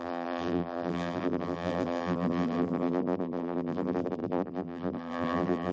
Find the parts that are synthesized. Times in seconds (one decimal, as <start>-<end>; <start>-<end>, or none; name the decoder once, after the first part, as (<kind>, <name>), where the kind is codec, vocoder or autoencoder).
0.0-5.7 (vocoder, BigVGAN v2)